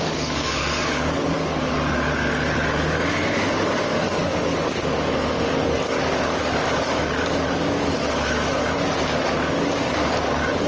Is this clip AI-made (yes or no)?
yes